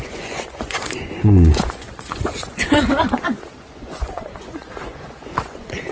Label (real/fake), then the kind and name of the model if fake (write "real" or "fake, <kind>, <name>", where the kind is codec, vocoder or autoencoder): fake, vocoder, Vocos